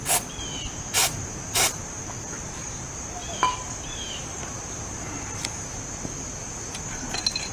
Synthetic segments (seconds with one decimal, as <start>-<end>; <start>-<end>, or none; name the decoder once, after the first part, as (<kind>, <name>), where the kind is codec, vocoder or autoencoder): 3.2-6.8 (vocoder, BigVGAN v2)

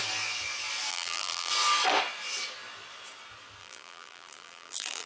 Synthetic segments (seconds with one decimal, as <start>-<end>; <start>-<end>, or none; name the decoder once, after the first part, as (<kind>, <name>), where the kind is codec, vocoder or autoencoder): 0.9-1.5 (vocoder, BigVGAN v2); 3.6-5.1